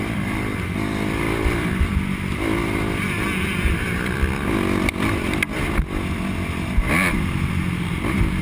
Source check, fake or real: real